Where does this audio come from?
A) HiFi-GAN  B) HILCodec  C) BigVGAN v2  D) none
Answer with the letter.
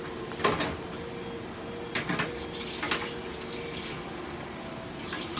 D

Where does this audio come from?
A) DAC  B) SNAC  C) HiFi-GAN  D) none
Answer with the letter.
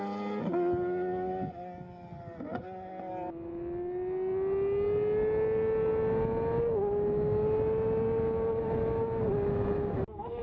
D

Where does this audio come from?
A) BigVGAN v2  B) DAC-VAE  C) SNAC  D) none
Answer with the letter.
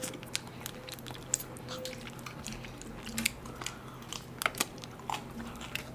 D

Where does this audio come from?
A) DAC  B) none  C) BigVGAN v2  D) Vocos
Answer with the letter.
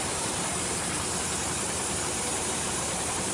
C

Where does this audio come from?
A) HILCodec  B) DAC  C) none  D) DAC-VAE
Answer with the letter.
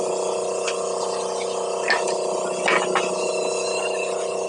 C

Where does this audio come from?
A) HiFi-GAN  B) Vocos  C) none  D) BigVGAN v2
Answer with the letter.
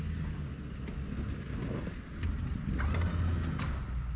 C